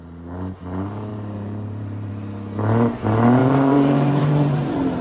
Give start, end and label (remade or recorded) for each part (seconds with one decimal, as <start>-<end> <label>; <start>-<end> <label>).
0.0-1.1 recorded; 1.1-2.1 remade; 2.1-3.4 recorded; 3.4-5.0 remade